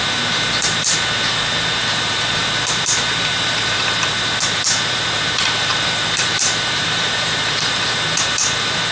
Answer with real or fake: fake